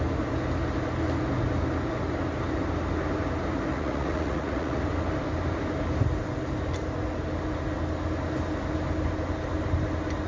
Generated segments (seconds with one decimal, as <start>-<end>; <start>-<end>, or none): 3.7-4.8

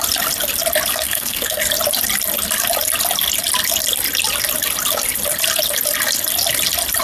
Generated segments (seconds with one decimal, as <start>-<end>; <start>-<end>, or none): 0.9-1.6

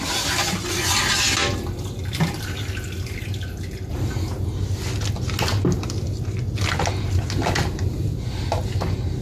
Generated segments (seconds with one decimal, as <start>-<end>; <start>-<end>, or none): none

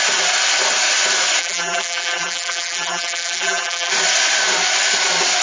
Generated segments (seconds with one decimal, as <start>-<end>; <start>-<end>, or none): 1.4-3.9

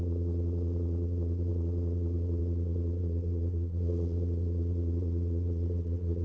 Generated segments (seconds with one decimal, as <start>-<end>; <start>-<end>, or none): 0.0-6.2